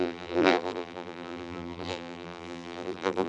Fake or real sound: fake